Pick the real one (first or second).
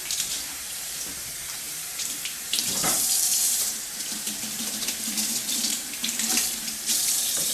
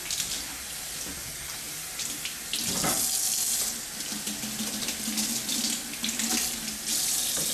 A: second